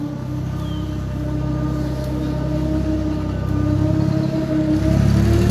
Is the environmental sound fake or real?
real